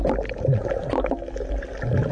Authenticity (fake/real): real